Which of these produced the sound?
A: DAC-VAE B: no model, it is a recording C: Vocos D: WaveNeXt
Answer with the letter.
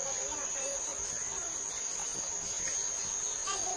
B